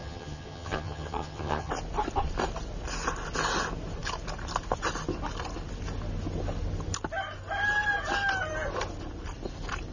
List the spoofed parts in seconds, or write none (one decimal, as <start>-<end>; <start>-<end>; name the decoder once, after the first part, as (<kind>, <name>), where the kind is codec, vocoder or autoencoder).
0.0-1.7 (vocoder, HiFi-GAN)